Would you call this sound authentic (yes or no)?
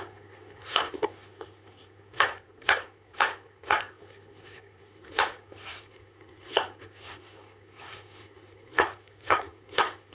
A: no